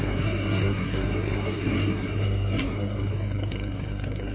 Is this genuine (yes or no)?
no